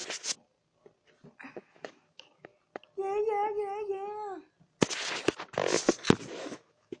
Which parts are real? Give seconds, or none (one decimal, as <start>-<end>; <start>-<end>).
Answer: 0.0-1.5; 2.5-6.3